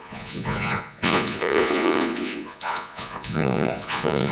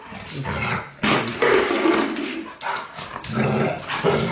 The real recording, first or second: second